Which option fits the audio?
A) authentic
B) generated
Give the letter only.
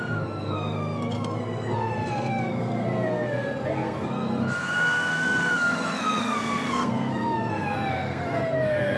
B